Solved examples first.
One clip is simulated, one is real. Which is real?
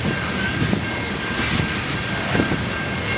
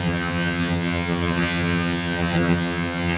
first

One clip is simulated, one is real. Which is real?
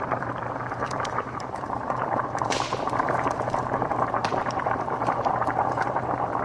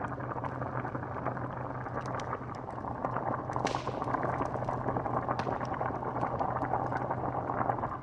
second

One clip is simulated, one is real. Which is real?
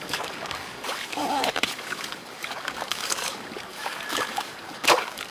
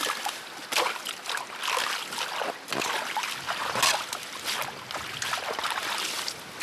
second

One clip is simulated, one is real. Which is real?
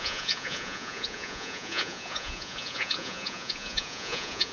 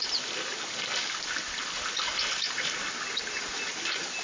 second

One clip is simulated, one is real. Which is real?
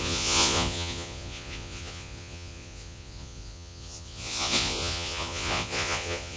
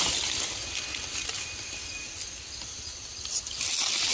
second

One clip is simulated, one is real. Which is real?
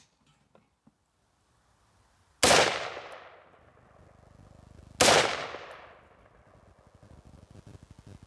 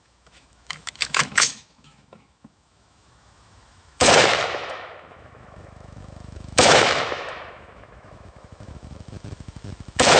first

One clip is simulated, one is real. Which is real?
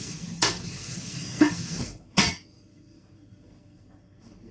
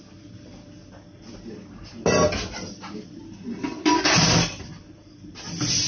second